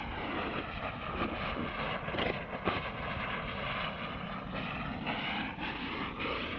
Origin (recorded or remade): recorded